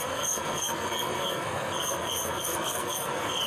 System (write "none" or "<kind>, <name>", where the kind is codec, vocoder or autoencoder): codec, SNAC